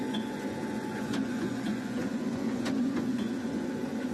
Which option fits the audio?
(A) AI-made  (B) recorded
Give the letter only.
A